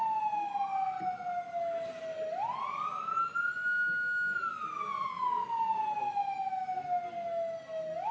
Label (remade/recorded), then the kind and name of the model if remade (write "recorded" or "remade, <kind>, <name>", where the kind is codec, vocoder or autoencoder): recorded